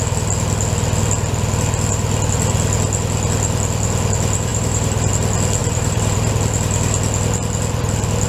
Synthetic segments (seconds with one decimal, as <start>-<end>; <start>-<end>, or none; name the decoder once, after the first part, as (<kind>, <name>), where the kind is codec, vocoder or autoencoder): 4.5-5.1 (vocoder, BigVGAN v2); 5.6-6.3